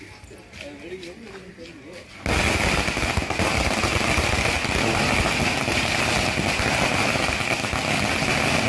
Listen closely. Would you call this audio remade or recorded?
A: recorded